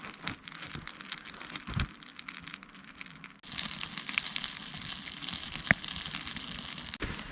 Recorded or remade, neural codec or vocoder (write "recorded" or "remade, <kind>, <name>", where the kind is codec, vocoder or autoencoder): recorded